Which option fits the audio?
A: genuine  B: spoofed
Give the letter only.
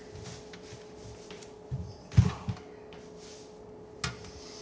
A